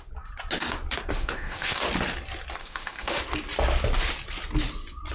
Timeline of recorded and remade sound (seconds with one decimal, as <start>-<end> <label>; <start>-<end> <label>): 0.0-1.1 recorded; 1.1-1.8 remade; 1.8-2.6 recorded; 2.6-3.2 remade; 3.2-5.1 recorded